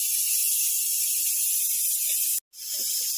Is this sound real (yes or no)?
yes